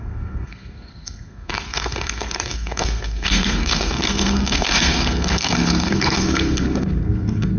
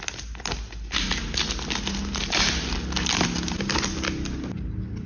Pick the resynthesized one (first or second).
first